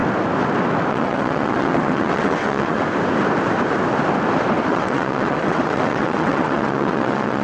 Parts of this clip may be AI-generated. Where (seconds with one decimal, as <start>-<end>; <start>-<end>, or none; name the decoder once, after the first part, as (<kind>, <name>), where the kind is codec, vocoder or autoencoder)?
0.9-2.8 (vocoder, WaveNeXt); 4.7-7.4